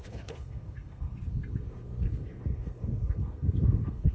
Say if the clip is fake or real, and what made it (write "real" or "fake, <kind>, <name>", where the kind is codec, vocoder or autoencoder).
fake, codec, SNAC